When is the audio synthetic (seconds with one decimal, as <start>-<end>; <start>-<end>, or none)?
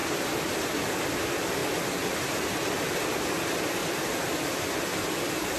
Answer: 4.9-5.6